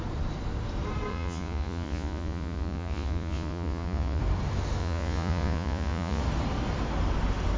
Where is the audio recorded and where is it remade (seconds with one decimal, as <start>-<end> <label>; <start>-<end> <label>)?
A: 0.0-1.1 recorded; 1.1-4.2 remade; 4.2-4.8 recorded; 4.8-6.2 remade; 6.2-7.6 recorded